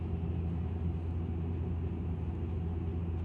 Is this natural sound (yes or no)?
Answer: yes